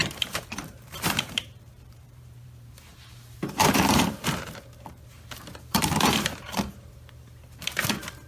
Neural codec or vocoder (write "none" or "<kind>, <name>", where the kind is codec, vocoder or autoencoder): vocoder, BigVGAN v2